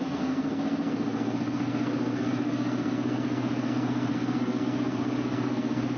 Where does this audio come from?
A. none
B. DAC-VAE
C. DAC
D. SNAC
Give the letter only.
D